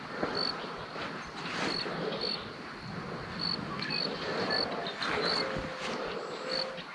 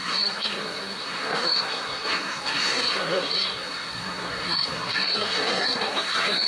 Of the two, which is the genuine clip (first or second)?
first